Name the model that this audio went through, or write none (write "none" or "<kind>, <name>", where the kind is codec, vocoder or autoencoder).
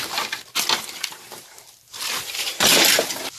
none